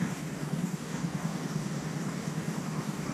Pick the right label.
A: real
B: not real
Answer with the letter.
B